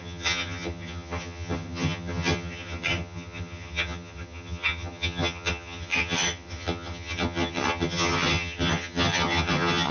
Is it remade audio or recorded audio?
remade